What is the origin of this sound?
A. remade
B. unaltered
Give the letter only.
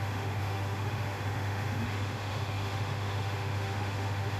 A